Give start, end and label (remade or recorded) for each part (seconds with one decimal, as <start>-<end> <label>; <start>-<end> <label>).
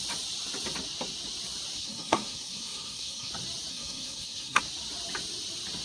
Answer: 0.0-1.8 recorded; 1.8-3.3 remade; 3.3-3.7 recorded; 3.7-4.6 remade; 4.6-5.8 recorded